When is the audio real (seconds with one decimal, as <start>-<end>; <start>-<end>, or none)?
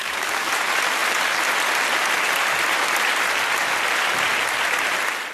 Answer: 0.5-5.3